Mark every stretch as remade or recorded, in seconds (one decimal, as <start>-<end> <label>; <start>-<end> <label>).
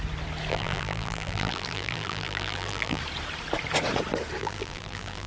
0.0-0.5 recorded; 0.5-3.0 remade; 3.0-4.4 recorded; 4.4-5.3 remade